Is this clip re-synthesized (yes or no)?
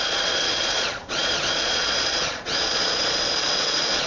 yes